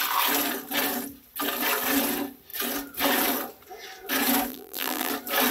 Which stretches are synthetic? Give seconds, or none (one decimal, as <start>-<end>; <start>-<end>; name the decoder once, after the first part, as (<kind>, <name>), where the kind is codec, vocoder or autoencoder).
4.5-5.1 (vocoder, BigVGAN v2)